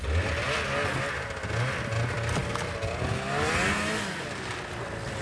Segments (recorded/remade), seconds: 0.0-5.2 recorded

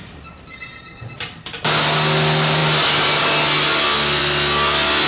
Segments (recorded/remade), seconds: 0.0-5.1 recorded

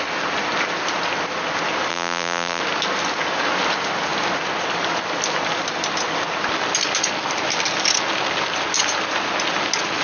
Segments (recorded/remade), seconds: 0.0-1.9 recorded; 1.9-2.6 remade; 2.6-10.0 recorded

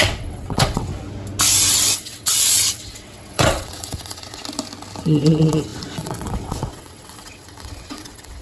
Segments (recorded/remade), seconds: 0.0-0.9 remade; 0.9-1.7 recorded; 1.7-4.4 remade; 4.4-5.0 recorded; 5.0-8.4 remade